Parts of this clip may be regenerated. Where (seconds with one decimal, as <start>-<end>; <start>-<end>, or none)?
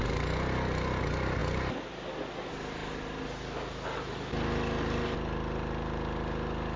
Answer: none